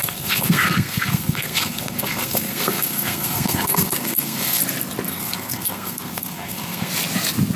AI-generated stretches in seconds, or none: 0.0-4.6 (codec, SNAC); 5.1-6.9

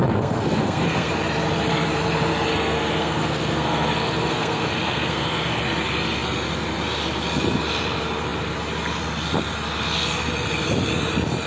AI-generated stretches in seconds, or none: 0.0-1.1 (codec, SNAC); 2.5-5.6

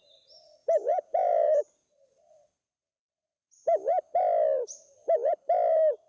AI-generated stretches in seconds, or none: 0.6-1.6 (vocoder, Vocos)

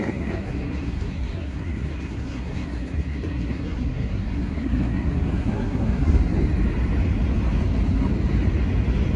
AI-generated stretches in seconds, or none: 0.0-6.2 (codec, SNAC)

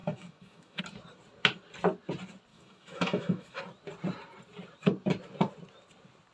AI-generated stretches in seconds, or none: 0.0-0.8 (autoencoder, DAC-VAE); 2.5-3.6

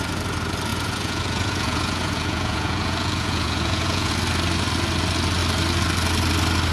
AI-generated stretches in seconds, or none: 0.7-4.1 (vocoder, Vocos)